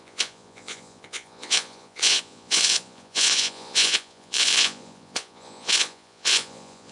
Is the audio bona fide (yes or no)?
no